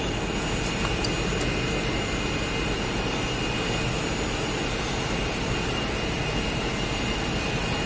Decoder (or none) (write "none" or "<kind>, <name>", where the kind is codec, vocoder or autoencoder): none